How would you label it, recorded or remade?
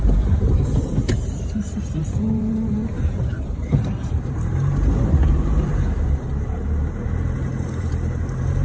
remade